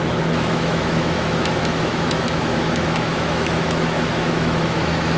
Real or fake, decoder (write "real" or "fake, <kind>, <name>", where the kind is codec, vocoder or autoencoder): fake, autoencoder, DAC-VAE